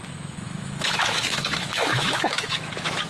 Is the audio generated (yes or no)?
yes